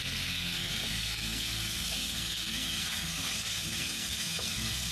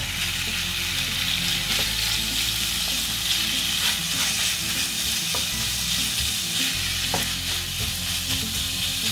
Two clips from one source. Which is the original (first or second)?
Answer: second